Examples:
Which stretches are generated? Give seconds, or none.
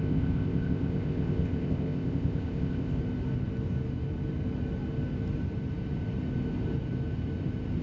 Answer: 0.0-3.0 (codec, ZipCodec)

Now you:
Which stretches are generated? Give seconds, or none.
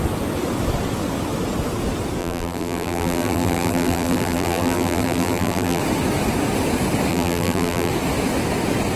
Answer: 2.2-5.8 (vocoder, BigVGAN v2); 7.1-7.9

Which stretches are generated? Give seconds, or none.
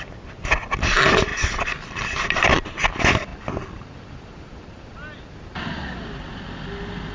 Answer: none